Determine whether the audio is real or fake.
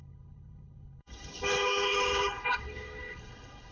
fake